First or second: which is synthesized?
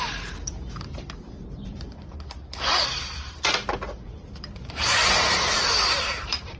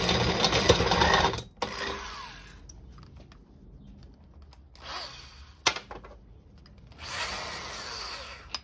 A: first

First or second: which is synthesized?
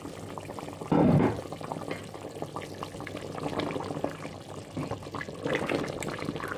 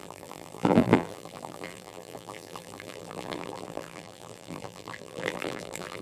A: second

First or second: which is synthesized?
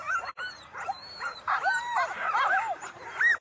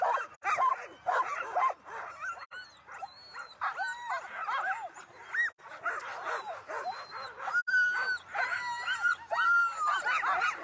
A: first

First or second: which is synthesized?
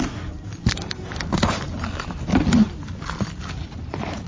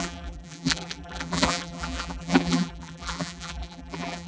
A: second